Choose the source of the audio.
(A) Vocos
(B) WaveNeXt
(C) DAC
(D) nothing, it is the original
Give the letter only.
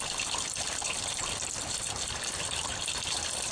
D